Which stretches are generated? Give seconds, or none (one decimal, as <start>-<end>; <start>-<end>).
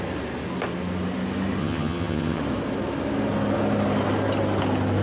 1.6-2.4